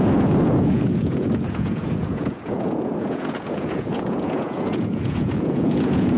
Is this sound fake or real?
fake